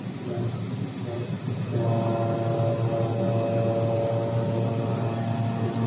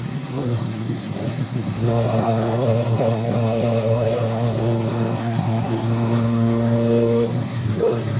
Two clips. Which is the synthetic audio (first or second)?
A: second